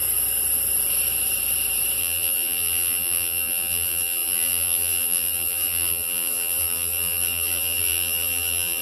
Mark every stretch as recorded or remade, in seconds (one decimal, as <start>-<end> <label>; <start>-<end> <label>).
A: 0.0-2.0 recorded; 2.0-8.8 remade